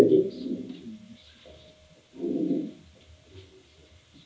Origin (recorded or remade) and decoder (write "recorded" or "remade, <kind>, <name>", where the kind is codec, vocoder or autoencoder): recorded